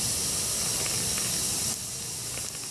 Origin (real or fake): real